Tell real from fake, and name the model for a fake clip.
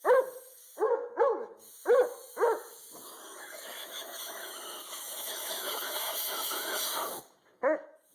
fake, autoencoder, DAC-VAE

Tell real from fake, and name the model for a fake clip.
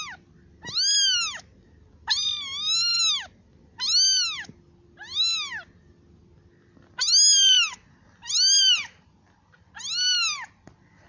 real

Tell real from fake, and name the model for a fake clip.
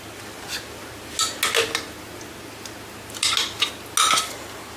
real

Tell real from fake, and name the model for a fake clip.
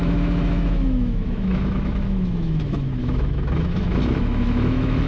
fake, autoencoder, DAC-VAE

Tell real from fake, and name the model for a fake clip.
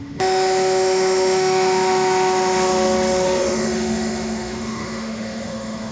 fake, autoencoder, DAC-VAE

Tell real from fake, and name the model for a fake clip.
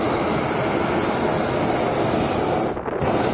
real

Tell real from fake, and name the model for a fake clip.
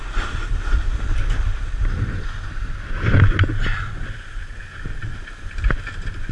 real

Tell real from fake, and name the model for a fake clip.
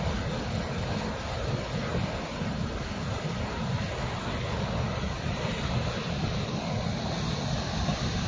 real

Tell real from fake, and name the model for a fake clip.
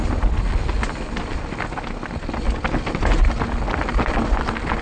real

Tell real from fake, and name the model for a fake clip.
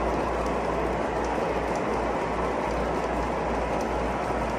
real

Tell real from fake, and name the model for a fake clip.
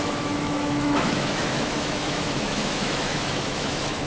fake, autoencoder, DAC-VAE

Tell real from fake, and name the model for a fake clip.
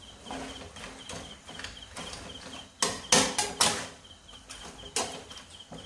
real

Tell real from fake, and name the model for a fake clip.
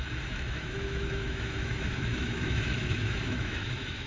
fake, autoencoder, DAC-VAE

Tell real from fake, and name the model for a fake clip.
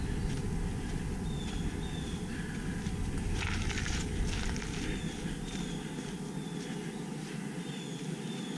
real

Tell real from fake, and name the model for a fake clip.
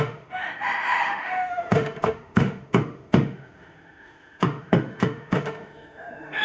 fake, autoencoder, DAC-VAE